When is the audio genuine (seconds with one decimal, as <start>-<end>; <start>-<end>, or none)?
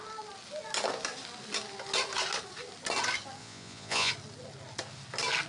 0.0-3.4; 4.1-5.5